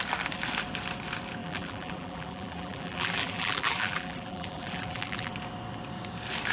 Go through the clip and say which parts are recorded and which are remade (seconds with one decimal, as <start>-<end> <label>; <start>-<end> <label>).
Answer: 0.0-1.4 recorded; 1.4-5.3 remade; 5.3-6.5 recorded